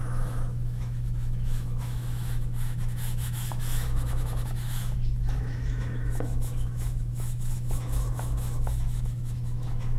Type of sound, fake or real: fake